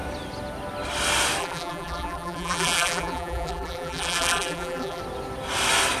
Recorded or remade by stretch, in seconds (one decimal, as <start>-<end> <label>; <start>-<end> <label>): 0.0-1.4 recorded; 1.4-5.0 remade; 5.0-6.0 recorded